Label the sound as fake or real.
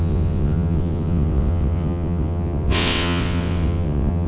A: fake